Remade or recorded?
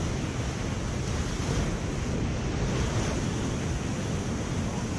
recorded